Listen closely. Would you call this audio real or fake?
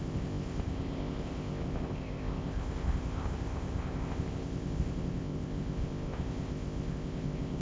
fake